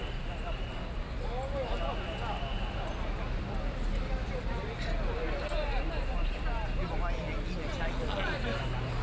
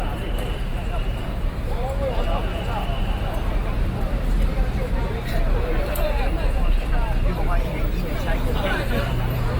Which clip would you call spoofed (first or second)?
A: second